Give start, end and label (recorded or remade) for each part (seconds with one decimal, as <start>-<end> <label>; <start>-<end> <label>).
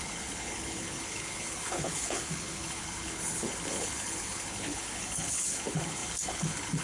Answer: 0.0-6.8 remade